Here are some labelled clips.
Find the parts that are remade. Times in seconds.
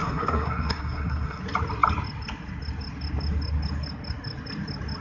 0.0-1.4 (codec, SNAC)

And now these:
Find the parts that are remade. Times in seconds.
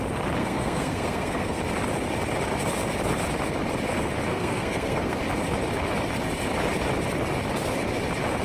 0.4-1.6 (codec, SNAC); 4.3-5.2